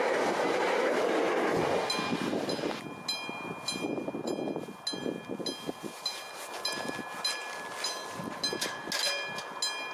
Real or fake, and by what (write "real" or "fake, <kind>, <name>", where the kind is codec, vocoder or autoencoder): real